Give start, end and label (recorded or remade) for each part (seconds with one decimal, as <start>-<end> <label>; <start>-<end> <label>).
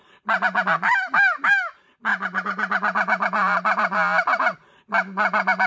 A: 0.0-5.7 recorded